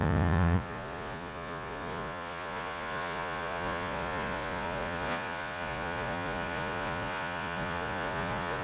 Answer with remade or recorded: remade